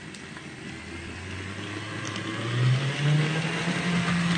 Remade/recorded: remade